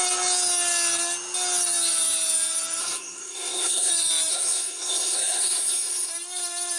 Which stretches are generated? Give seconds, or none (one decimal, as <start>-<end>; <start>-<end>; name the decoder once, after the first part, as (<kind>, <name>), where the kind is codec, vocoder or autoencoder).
2.8-3.9 (codec, SNAC); 4.3-6.1